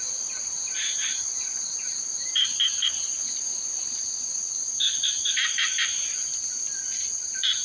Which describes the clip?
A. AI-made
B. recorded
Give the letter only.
A